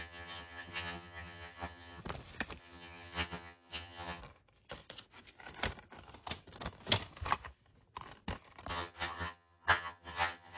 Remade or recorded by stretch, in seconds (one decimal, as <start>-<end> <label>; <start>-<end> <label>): 0.0-2.0 remade; 2.0-2.6 recorded; 2.6-4.2 remade; 4.2-8.7 recorded; 8.7-10.6 remade